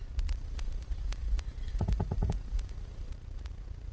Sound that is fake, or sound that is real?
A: fake